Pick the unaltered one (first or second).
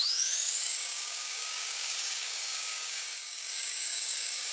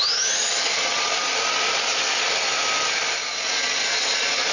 second